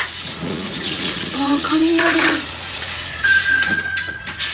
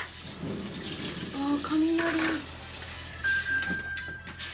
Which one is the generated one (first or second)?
first